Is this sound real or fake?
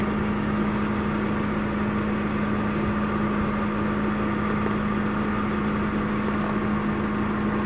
real